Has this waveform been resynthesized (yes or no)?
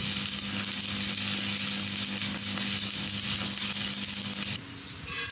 no